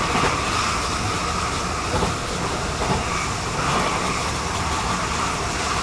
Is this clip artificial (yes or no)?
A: no